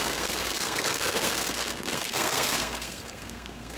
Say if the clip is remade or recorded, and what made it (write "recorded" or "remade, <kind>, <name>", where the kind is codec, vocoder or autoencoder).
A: remade, codec, SNAC